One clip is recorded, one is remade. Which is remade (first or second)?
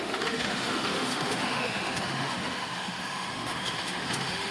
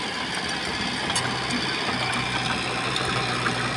first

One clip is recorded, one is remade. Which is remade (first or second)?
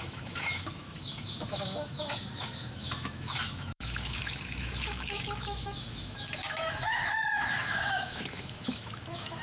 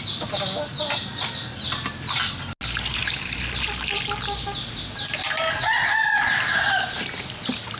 first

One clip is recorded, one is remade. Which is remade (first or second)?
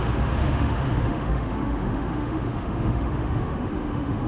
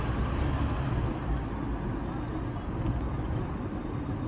first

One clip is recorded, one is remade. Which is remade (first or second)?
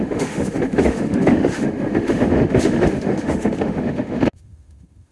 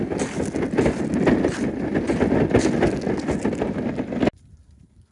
first